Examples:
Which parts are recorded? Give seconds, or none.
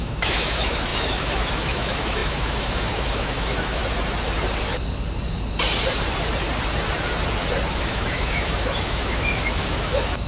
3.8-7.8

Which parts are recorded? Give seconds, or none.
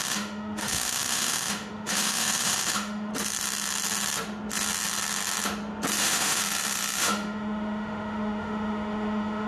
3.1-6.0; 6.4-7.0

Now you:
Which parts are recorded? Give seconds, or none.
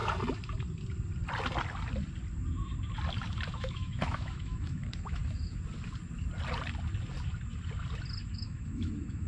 0.0-3.5; 5.2-8.3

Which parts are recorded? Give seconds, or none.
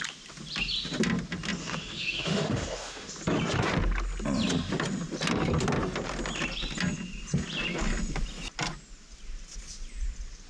0.0-1.6; 3.1-10.5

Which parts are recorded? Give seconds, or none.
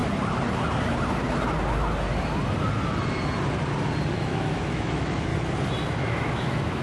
0.0-4.1; 5.3-6.0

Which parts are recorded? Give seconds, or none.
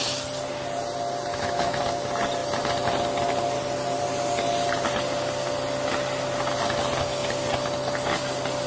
0.0-1.3; 1.8-8.7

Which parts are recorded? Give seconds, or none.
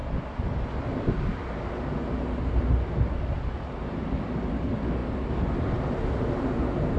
0.0-7.0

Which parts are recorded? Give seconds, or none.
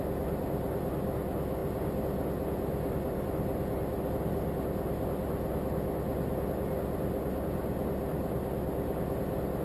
0.0-9.6